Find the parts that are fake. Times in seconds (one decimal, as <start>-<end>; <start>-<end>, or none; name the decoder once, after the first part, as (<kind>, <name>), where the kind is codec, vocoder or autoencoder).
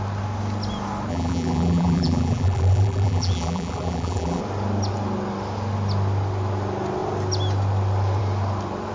1.1-4.4 (vocoder, BigVGAN v2)